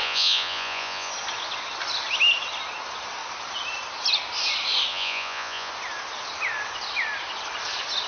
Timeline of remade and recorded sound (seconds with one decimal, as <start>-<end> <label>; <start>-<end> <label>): 0.0-1.1 remade; 1.1-4.9 recorded; 4.9-5.7 remade; 5.7-8.1 recorded